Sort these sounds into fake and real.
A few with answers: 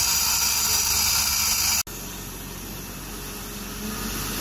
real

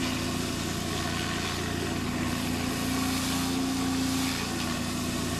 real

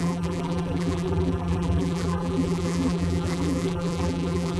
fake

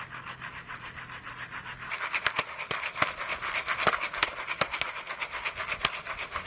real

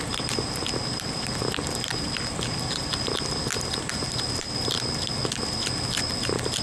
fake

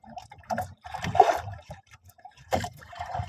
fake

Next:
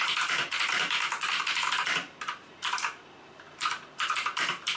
fake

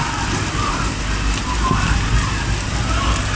real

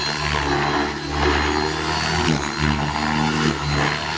real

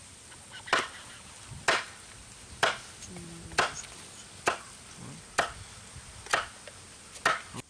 real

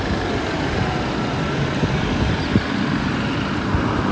real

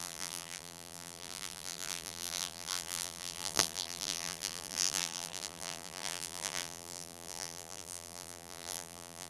fake